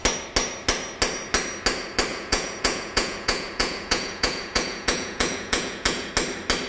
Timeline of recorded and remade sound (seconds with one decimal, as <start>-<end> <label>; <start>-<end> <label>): 0.0-2.1 recorded; 2.1-6.1 remade; 6.1-6.7 recorded